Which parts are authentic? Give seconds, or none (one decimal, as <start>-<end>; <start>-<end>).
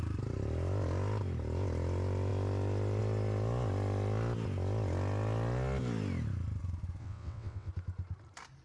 0.0-7.0; 7.7-8.6